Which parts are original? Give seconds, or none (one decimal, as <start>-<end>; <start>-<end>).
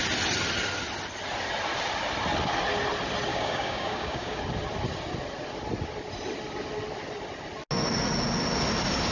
0.0-3.3; 4.4-9.1